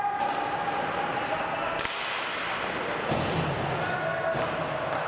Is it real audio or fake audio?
real